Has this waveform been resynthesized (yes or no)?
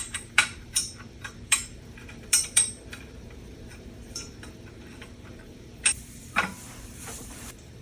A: yes